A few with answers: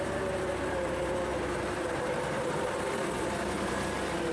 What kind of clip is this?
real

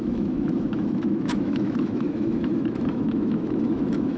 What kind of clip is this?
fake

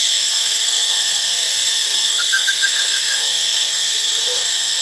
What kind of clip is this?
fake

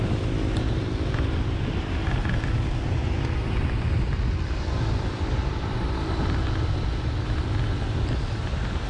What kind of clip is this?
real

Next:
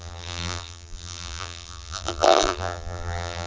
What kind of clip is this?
fake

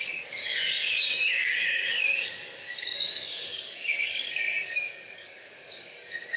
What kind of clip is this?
fake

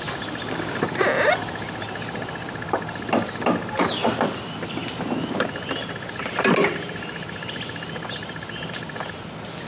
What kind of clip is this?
real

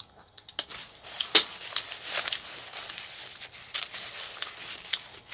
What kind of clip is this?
real